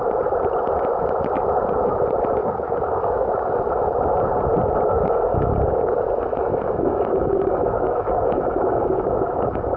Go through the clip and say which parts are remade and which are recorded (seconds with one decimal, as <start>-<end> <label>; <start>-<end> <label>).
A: 0.0-2.4 recorded; 2.4-3.3 remade; 3.3-5.3 recorded; 5.3-5.9 remade; 5.9-6.5 recorded; 6.5-9.8 remade